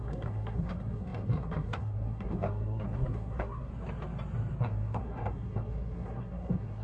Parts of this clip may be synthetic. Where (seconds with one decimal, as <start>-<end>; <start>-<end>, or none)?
0.0-3.7; 4.6-6.8